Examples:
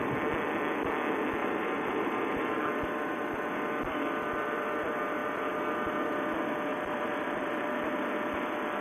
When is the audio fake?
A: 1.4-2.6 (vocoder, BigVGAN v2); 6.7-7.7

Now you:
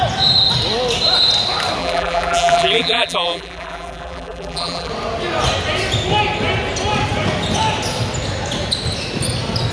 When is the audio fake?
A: 1.8-4.9 (vocoder, BigVGAN v2)

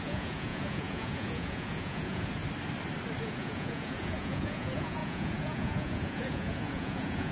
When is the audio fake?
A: 0.0-2.4 (vocoder, Vocos); 3.2-7.3

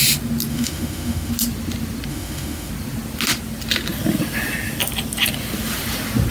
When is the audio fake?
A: 0.5-1.3 (autoencoder, DAC-VAE); 2.1-2.7

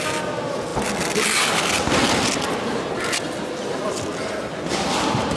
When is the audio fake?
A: none

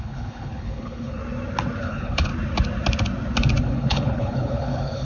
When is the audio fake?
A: 0.0-1.2 (codec, HILCodec); 1.8-2.3; 3.6-5.0